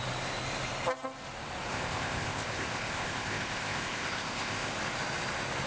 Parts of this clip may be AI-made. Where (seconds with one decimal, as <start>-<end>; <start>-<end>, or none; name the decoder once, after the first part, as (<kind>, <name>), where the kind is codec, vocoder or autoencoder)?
1.7-4.7 (codec, ZipCodec)